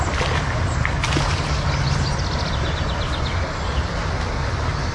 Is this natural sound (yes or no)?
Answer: yes